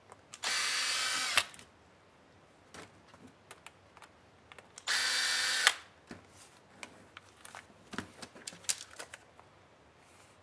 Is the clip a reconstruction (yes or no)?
no